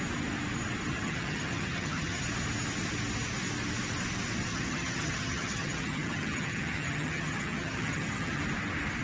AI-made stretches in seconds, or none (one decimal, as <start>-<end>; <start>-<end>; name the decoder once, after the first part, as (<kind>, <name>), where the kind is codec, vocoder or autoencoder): 0.9-2.2 (vocoder, HiFi-GAN); 4.5-8.4